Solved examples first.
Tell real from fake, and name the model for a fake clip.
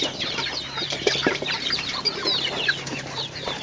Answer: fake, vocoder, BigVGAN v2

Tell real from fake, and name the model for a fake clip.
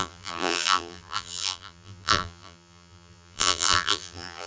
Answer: fake, vocoder, BigVGAN v2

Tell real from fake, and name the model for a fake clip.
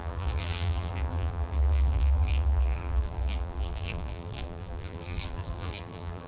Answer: fake, vocoder, BigVGAN v2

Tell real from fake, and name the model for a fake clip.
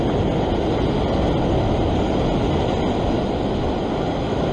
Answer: real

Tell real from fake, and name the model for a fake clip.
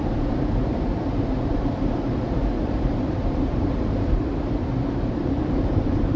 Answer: fake, vocoder, BigVGAN v2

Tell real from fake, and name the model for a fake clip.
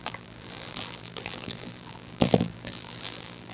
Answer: fake, vocoder, BigVGAN v2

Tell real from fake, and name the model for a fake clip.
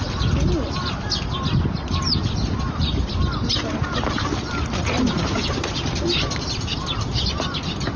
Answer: real